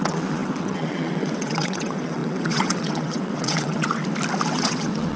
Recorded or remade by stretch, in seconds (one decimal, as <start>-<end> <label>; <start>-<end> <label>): 0.0-4.0 remade; 4.0-4.5 recorded; 4.5-5.2 remade